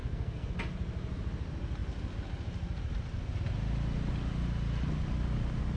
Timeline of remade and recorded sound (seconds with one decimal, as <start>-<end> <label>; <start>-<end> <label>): 0.0-0.5 remade; 0.5-5.8 recorded